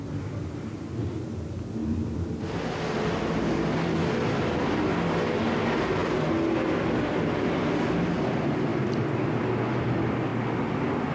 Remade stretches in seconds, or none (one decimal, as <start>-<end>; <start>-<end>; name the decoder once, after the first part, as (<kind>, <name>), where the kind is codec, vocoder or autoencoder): 1.8-2.5 (vocoder, BigVGAN v2); 8.7-9.4